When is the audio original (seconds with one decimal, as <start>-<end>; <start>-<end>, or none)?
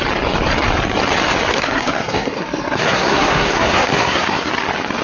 0.0-1.5; 4.5-5.0